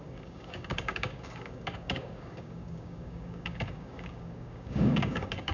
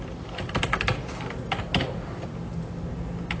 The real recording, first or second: second